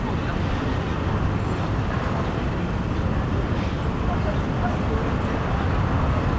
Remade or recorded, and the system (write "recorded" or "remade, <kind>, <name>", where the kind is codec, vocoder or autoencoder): recorded